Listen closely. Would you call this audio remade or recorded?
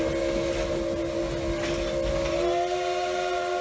recorded